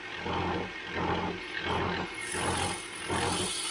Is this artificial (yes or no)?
no